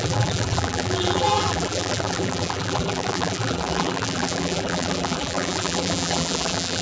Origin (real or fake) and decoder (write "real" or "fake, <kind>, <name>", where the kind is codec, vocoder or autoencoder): fake, vocoder, BigVGAN v2